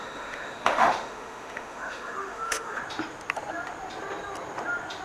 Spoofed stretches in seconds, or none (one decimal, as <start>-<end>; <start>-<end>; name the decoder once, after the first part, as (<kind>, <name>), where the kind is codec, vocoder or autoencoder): 0.0-2.8 (autoencoder, DAC-VAE)